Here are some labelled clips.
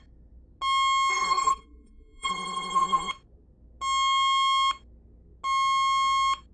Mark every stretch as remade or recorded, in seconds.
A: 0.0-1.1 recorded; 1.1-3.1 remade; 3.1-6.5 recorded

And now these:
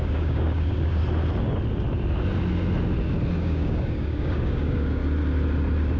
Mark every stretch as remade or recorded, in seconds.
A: 0.0-1.0 remade; 1.0-3.4 recorded; 3.4-5.0 remade; 5.0-6.0 recorded

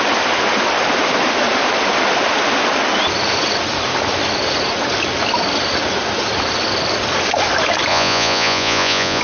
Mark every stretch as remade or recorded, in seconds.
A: 0.0-7.9 recorded; 7.9-9.2 remade